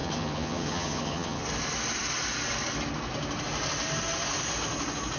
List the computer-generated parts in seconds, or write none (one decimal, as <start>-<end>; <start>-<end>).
0.0-1.4